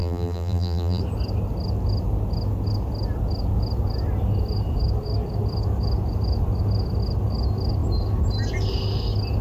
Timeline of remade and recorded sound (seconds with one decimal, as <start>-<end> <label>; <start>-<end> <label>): 0.0-1.0 remade; 1.0-9.4 recorded